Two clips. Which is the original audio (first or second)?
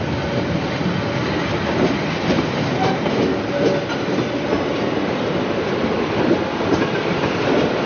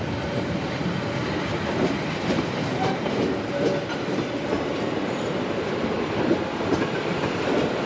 first